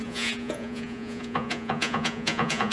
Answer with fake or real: fake